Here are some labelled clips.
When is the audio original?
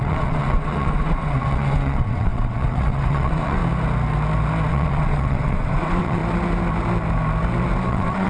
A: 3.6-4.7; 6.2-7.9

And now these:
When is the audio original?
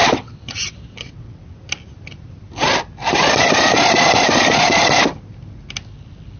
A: 1.7-6.4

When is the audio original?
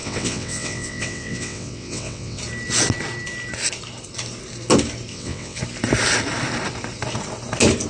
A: 2.4-5.1; 5.6-7.9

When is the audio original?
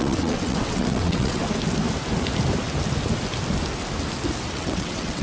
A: 1.4-4.5